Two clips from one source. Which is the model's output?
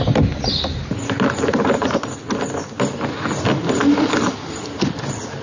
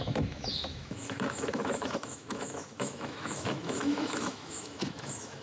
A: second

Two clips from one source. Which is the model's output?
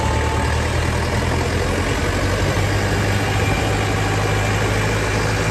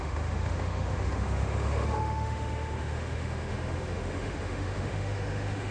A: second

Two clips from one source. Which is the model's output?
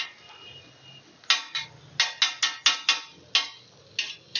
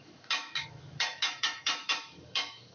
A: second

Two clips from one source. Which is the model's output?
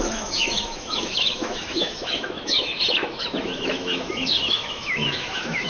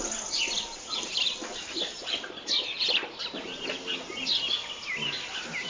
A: first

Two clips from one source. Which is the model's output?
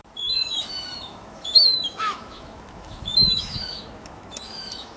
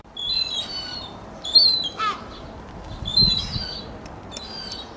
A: first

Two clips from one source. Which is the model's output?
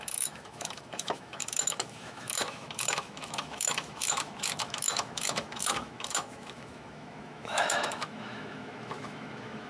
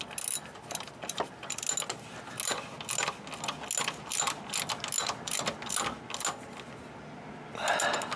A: first